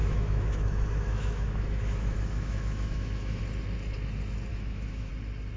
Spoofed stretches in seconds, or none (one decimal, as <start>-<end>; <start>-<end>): 0.0-3.4; 4.5-5.1